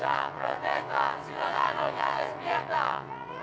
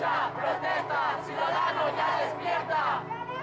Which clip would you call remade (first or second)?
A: first